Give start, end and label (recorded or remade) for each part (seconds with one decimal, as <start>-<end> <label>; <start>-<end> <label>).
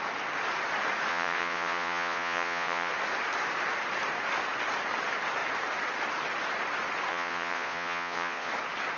0.0-1.1 recorded; 1.1-2.9 remade; 2.9-7.1 recorded; 7.1-8.5 remade; 8.5-9.0 recorded